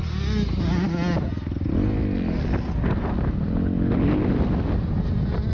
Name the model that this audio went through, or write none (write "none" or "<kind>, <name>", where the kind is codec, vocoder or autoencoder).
none